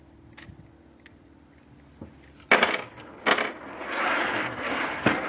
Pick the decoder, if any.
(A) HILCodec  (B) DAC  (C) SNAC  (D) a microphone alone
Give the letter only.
D